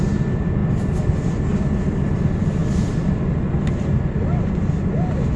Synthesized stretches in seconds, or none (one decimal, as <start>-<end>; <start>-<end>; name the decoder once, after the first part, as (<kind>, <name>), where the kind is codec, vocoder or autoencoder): none